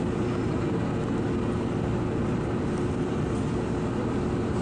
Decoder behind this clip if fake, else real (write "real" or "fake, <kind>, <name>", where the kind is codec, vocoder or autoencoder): real